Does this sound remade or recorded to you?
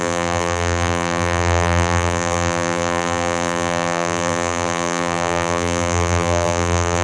remade